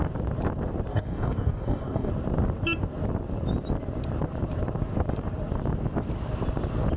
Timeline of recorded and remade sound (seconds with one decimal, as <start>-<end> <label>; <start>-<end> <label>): 0.0-0.9 recorded; 0.9-2.1 remade; 2.1-7.0 recorded